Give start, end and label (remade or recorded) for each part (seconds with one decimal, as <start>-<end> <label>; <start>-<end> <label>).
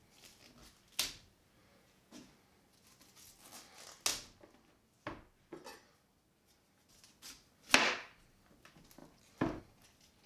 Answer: 0.0-1.7 recorded; 1.7-2.3 remade; 2.3-10.3 recorded